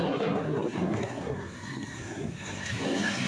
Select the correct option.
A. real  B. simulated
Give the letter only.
B